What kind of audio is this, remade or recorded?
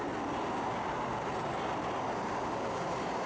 recorded